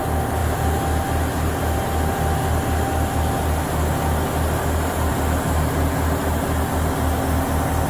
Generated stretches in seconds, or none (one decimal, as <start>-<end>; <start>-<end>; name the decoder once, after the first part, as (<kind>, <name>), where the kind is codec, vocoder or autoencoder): none